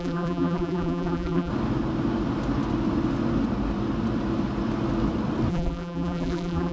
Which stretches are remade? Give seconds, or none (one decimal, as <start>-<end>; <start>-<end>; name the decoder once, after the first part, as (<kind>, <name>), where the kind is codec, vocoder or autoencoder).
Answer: 0.0-1.5 (vocoder, BigVGAN v2); 5.5-6.7